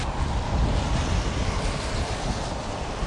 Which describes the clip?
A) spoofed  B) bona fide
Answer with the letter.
B